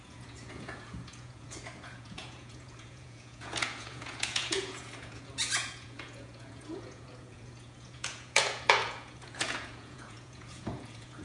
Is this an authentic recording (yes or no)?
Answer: no